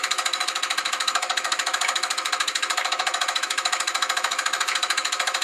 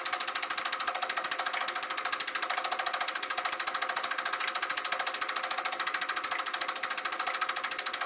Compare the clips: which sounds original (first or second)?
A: second